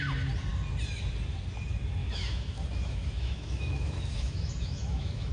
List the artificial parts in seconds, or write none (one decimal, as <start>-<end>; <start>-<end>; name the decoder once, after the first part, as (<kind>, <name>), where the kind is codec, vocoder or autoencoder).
2.0-5.3 (autoencoder, DAC-VAE)